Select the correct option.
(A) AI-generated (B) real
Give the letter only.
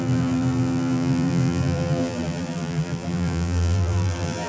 A